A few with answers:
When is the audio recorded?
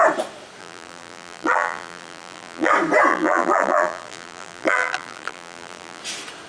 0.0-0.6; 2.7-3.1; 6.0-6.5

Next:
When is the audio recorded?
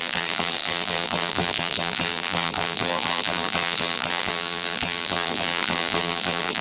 none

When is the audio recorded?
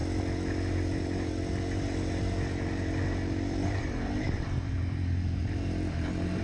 0.0-3.8